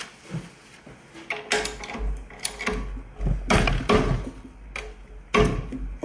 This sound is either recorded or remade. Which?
recorded